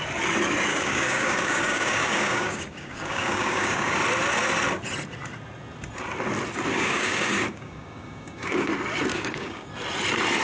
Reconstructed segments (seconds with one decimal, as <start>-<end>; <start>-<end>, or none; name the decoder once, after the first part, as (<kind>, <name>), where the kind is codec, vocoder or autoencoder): 0.7-4.0 (codec, DAC); 6.7-8.7; 9.1-9.7